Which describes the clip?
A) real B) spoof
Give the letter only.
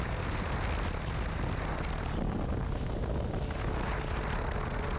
A